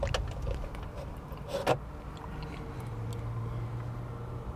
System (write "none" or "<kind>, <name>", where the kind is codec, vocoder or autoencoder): none